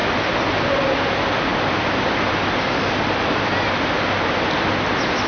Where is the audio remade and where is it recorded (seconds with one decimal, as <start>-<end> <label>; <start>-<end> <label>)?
0.0-5.3 recorded